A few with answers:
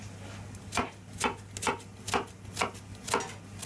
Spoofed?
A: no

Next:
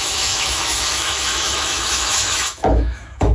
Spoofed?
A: yes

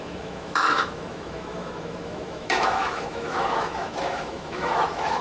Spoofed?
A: yes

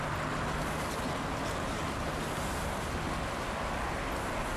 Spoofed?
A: no